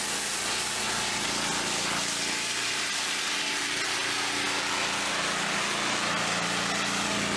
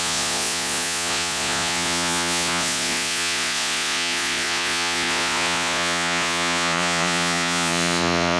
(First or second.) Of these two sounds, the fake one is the second